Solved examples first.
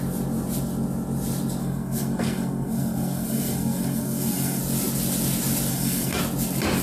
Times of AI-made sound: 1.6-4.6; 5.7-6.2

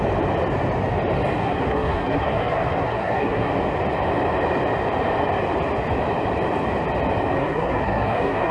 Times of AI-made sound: 1.4-3.5; 7.4-8.5

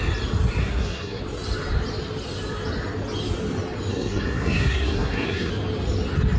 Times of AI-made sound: 0.6-1.2; 3.9-5.5

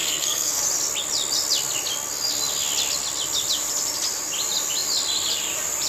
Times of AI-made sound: 0.0-0.6

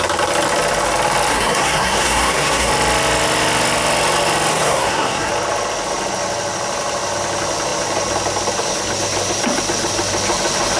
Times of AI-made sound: 1.3-2.7; 4.5-5.3